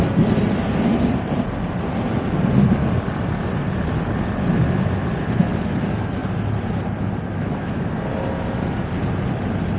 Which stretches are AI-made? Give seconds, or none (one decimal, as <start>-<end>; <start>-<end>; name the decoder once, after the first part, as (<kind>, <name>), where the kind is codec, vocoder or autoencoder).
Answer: 7.3-7.8 (autoencoder, DAC-VAE)